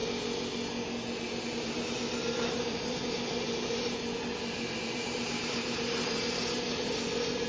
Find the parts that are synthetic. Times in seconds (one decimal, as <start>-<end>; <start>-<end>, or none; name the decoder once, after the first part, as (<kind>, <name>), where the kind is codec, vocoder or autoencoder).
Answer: 1.5-7.5 (vocoder, BigVGAN v2)